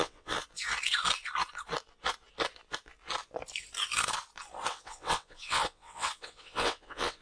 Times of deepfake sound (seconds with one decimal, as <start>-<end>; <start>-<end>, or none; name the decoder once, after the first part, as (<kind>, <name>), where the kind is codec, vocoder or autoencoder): 0.0-0.4 (vocoder, WaveNeXt); 4.7-7.2

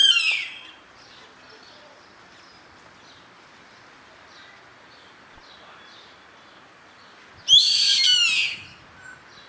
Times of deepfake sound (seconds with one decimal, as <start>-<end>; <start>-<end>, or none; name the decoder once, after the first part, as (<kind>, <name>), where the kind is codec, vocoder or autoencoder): none

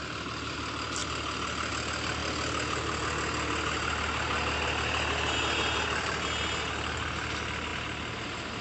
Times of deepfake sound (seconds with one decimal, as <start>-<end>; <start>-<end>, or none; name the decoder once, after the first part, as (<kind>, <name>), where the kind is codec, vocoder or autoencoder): none

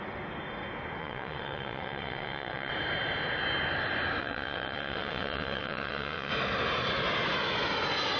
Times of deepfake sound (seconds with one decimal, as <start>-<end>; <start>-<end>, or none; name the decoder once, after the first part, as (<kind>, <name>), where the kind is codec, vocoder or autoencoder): 1.0-2.7 (vocoder, WaveNeXt); 4.2-6.3